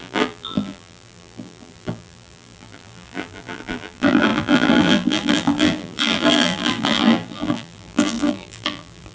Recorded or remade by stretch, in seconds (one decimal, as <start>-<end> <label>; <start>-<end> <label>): 0.0-9.1 remade